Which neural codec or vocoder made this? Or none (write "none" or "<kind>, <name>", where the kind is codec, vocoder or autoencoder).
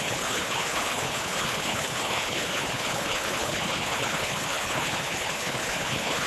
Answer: codec, HILCodec